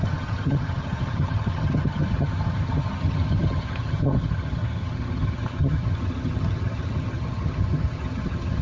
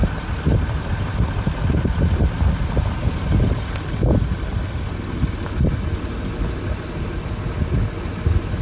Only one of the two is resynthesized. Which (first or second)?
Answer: first